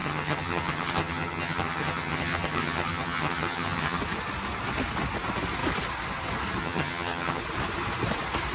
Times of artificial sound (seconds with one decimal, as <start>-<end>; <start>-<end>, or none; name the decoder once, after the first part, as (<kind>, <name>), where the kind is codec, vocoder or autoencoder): 0.0-4.0 (vocoder, HiFi-GAN); 6.6-7.4